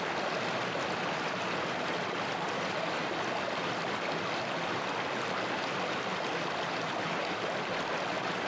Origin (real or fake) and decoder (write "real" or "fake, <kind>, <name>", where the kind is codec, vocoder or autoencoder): real